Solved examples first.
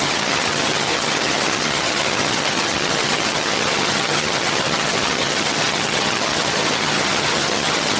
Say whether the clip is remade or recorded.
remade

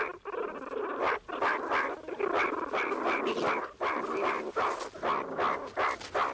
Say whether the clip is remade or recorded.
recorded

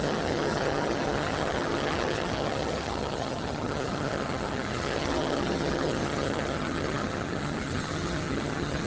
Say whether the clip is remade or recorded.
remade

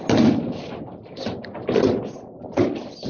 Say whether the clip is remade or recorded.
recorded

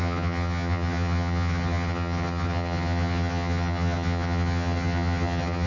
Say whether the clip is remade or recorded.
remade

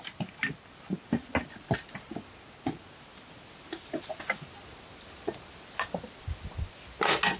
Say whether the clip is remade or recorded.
recorded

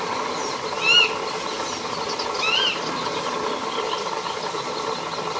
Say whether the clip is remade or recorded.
recorded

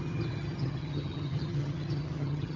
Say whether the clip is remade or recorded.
remade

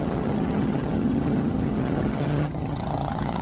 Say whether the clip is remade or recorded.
remade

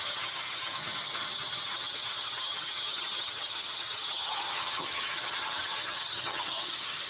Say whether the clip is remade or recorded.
remade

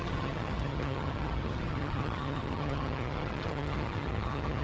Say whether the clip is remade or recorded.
remade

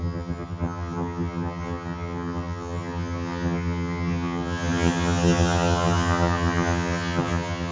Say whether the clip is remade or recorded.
remade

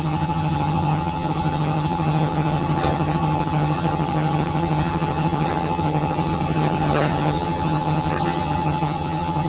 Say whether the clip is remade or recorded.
remade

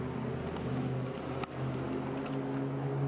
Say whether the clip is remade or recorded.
recorded